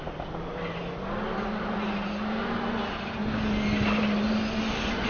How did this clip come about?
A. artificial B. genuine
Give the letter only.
B